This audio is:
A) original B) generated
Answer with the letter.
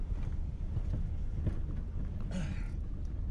A